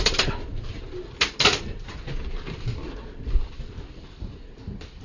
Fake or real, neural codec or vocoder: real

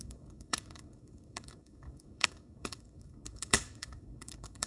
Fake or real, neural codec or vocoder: fake, codec, DAC